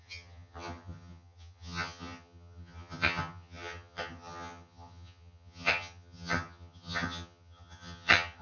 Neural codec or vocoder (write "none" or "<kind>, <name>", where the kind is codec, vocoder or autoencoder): vocoder, HiFi-GAN